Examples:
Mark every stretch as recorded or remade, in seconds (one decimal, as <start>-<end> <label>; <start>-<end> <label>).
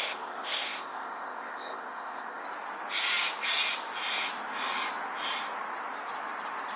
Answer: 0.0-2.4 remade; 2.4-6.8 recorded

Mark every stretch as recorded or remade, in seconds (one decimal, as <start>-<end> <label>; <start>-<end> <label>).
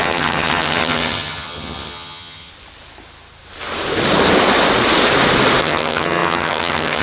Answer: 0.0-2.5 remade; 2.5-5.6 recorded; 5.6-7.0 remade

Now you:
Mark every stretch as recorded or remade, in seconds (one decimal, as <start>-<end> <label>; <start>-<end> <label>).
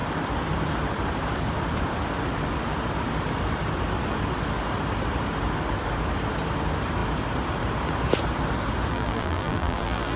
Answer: 0.0-8.9 recorded; 8.9-10.2 remade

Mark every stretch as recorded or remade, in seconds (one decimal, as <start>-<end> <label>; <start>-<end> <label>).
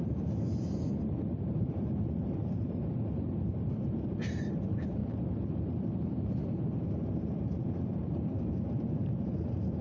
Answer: 0.0-0.9 remade; 0.9-1.4 recorded; 1.4-5.0 remade; 5.0-5.5 recorded; 5.5-9.8 remade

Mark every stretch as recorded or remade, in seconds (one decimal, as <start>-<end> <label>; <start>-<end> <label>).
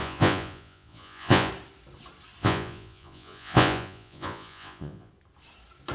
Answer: 0.0-1.5 remade; 1.5-2.4 recorded; 2.4-5.1 remade; 5.1-5.9 recorded